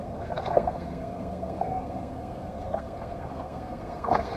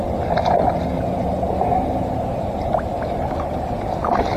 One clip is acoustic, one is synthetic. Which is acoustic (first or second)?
second